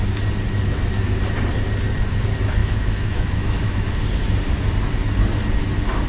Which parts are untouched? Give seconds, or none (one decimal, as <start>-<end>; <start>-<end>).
0.0-2.6; 3.9-6.1